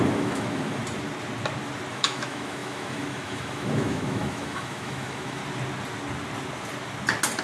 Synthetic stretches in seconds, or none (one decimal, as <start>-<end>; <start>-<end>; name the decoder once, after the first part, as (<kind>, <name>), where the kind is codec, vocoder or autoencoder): 0.0-0.8 (autoencoder, DAC-VAE); 1.9-5.4